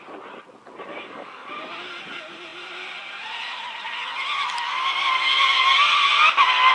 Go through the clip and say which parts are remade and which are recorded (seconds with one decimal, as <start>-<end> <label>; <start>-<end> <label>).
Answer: 0.0-0.9 recorded; 0.9-1.5 remade; 1.5-6.7 recorded